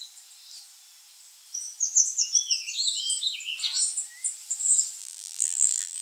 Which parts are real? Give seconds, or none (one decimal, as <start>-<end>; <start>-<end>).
0.0-5.0